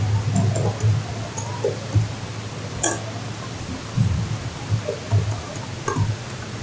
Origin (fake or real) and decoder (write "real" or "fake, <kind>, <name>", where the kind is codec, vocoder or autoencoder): real